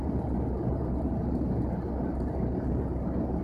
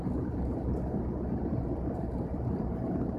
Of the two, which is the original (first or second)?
first